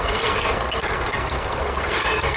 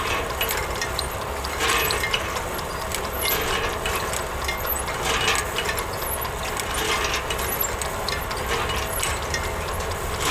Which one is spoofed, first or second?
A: first